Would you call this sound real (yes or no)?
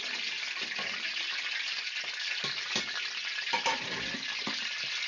yes